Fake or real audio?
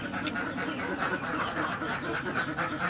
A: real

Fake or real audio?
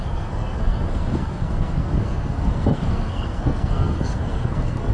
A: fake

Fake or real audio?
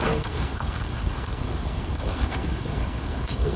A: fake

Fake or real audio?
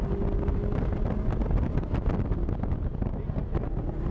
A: real